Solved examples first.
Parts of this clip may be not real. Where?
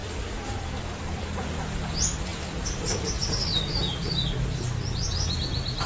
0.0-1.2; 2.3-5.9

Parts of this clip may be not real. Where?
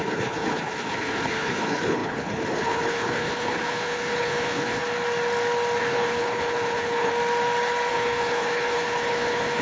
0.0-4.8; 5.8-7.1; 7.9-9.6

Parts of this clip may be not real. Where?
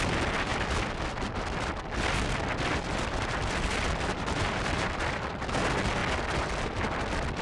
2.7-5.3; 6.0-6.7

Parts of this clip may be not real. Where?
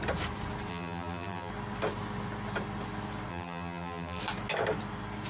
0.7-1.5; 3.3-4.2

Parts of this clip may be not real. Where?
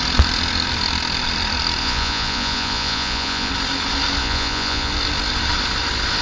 1.8-3.5; 4.2-4.9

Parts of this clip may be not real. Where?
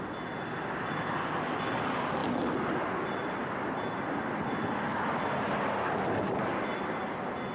none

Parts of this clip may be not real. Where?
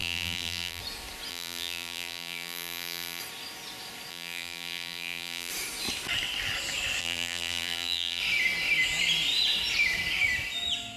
0.0-0.8; 1.3-3.2; 4.1-5.5; 7.0-8.2